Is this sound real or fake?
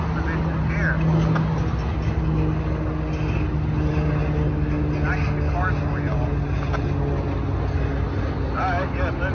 real